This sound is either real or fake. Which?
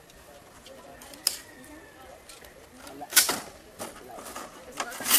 real